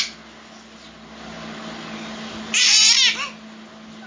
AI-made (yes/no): no